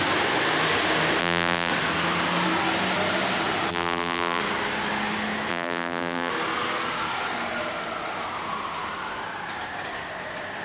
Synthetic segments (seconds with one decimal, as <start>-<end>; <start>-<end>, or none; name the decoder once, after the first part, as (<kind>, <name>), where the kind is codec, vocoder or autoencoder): 1.2-1.7 (vocoder, BigVGAN v2); 3.7-4.4; 5.5-6.3